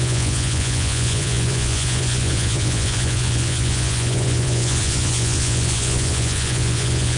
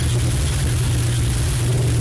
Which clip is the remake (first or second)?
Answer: first